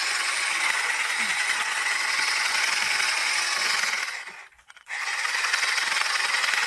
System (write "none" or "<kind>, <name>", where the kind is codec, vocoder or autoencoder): vocoder, Vocos